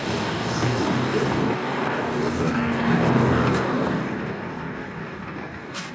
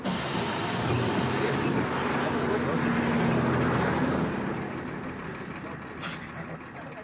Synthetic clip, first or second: first